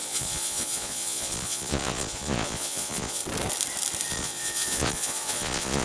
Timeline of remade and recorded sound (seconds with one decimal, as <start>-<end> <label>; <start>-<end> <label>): 0.0-3.2 remade; 3.2-4.1 recorded; 4.1-5.8 remade